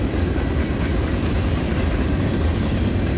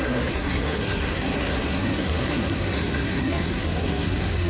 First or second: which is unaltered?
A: first